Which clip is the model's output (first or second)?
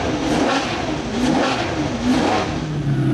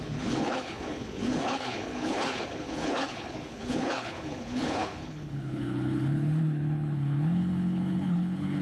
second